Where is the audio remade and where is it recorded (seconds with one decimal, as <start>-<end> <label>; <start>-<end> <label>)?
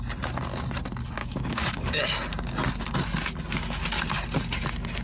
0.0-1.2 recorded; 1.2-2.0 remade; 2.0-5.0 recorded